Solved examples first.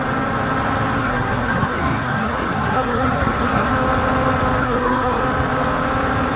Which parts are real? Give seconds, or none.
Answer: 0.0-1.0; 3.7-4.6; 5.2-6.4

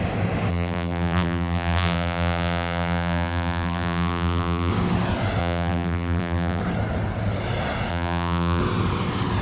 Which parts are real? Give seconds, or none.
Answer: 0.0-0.5; 4.7-5.4; 6.6-7.9; 8.6-9.4

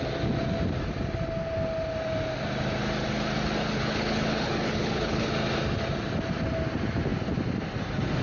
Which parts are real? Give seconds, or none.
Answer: 0.0-3.6; 5.3-8.2

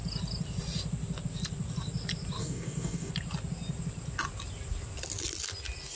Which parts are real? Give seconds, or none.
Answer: 0.0-2.4; 3.1-6.0

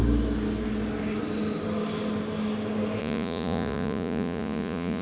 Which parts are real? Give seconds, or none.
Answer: 0.0-3.0

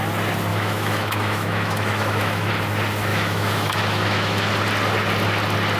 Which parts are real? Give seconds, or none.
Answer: 0.0-0.5; 2.5-3.1; 4.5-5.8

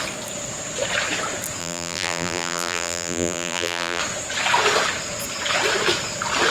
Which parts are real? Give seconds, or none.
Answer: 0.0-1.6; 4.0-6.5

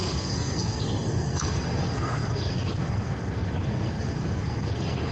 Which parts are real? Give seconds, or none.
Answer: none